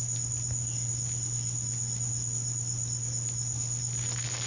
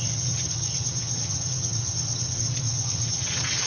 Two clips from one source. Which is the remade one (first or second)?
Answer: second